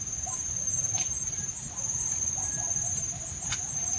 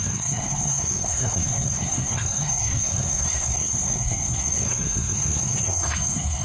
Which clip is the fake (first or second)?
second